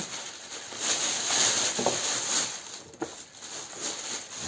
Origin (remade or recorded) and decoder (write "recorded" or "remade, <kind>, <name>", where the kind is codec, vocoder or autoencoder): recorded